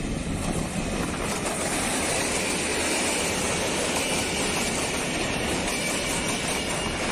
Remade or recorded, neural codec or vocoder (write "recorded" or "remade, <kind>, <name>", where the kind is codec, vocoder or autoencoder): recorded